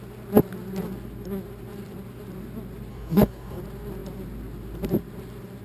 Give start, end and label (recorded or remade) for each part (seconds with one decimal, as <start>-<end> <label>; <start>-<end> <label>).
0.0-2.9 recorded; 2.9-3.6 remade; 3.6-5.6 recorded